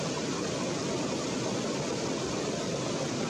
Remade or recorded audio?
recorded